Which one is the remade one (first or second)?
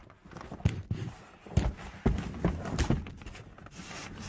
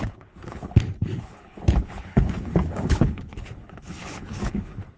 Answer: second